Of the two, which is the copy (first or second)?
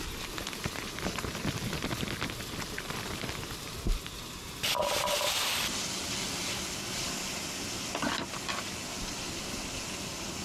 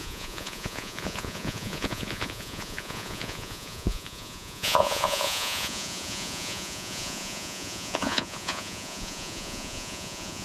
second